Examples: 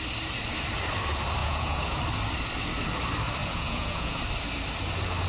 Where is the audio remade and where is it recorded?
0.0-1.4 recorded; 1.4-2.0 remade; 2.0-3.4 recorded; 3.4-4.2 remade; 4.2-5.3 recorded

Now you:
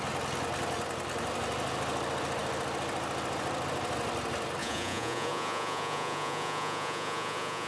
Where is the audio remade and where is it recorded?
0.0-4.6 recorded; 4.6-7.7 remade

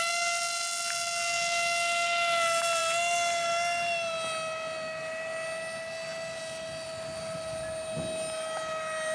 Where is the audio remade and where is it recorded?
0.0-9.1 recorded

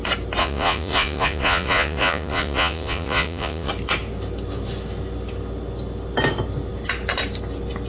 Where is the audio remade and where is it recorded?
0.0-0.4 recorded; 0.4-3.7 remade; 3.7-7.9 recorded

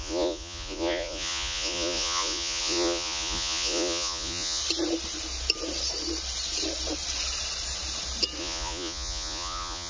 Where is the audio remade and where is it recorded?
0.0-4.6 remade; 4.6-8.4 recorded; 8.4-9.9 remade

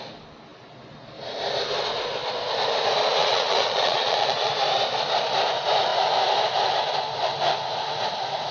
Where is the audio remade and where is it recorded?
0.0-3.2 recorded; 3.2-4.5 remade; 4.5-8.5 recorded

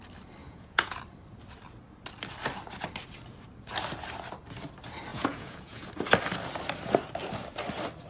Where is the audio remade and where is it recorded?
0.0-0.4 recorded; 0.4-1.0 remade; 1.0-5.1 recorded; 5.1-5.9 remade; 5.9-8.1 recorded